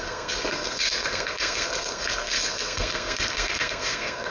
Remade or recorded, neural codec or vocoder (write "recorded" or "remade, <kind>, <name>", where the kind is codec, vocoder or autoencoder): remade, codec, SNAC